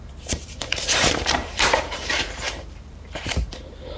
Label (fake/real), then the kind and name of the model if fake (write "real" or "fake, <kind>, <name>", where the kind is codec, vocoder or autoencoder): fake, vocoder, BigVGAN v2